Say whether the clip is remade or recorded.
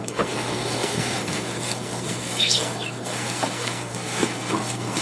remade